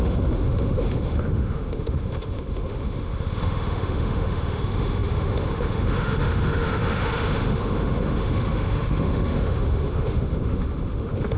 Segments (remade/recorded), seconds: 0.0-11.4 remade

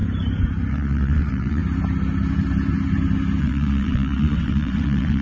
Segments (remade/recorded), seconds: 0.0-0.7 recorded; 0.7-1.6 remade; 1.6-3.4 recorded; 3.4-5.2 remade

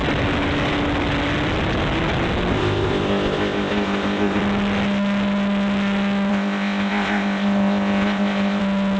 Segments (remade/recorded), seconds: 0.0-2.5 recorded; 2.5-4.4 remade; 4.4-6.3 recorded; 6.3-8.6 remade; 8.6-9.0 recorded

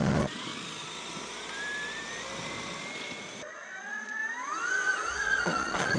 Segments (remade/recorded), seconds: 0.0-0.5 remade; 0.5-3.4 recorded; 3.4-4.2 remade; 4.2-4.9 recorded; 4.9-6.0 remade

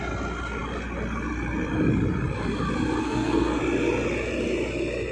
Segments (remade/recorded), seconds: 0.0-3.0 recorded; 3.0-3.6 remade; 3.6-5.1 recorded

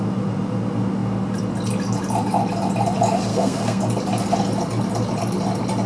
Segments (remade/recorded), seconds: 0.0-3.3 recorded; 3.3-3.8 remade; 3.8-5.9 recorded

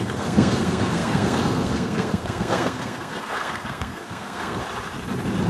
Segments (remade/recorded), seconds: 0.0-4.6 remade; 4.6-5.5 recorded